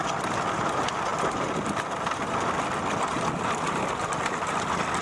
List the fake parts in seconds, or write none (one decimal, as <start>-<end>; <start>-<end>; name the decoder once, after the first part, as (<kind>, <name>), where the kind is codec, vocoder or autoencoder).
none